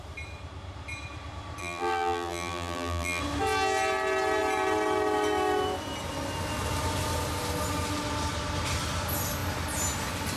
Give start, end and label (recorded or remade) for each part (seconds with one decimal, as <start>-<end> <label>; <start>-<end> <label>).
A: 0.0-1.6 recorded; 1.6-3.2 remade; 3.2-10.4 recorded

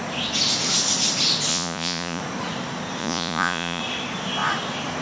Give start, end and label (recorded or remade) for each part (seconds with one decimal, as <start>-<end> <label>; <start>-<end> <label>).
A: 0.0-1.5 recorded; 1.5-2.2 remade; 2.2-3.0 recorded; 3.0-3.8 remade; 3.8-5.0 recorded